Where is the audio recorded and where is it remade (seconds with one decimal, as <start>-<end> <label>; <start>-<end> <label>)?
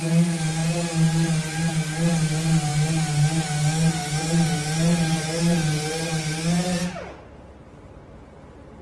0.0-8.8 recorded